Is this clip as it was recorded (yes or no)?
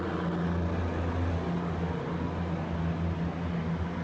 yes